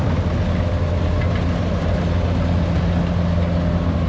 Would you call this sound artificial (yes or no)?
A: no